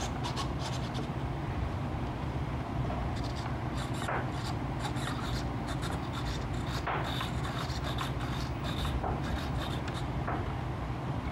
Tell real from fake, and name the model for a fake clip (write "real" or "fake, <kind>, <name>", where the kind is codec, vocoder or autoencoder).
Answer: fake, vocoder, BigVGAN v2